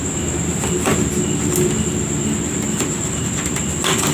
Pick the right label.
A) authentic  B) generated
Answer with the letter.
A